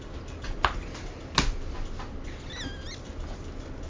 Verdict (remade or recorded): recorded